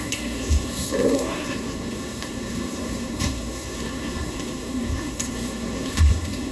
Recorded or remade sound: remade